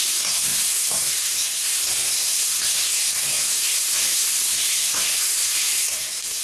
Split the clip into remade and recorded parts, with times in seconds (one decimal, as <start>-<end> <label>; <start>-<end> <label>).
0.0-6.4 remade